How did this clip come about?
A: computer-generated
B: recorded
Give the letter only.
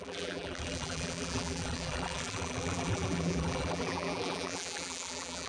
A